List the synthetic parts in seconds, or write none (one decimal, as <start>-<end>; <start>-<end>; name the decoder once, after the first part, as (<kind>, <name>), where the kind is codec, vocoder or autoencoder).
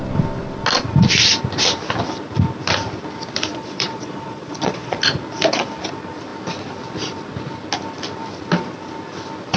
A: 3.5-5.0 (vocoder, Vocos)